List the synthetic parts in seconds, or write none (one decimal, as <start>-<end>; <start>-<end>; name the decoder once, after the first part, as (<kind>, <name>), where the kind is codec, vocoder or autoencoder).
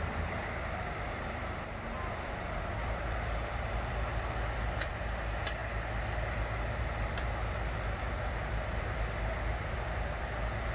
0.0-5.6 (vocoder, BigVGAN v2); 6.8-10.7